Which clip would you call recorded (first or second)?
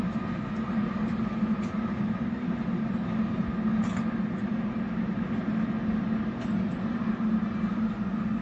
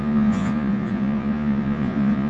first